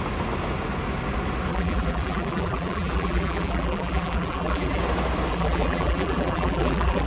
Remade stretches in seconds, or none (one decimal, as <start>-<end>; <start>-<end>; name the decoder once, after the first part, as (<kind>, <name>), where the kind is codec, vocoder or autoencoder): 1.5-4.8 (vocoder, BigVGAN v2); 5.3-7.1